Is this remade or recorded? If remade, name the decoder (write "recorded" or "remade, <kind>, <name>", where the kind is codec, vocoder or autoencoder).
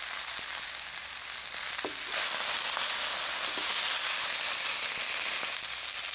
recorded